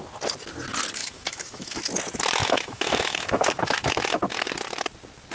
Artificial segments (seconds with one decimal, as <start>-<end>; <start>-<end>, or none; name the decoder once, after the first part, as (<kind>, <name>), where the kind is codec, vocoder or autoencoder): 1.0-1.8 (autoencoder, DAC-VAE); 2.4-4.2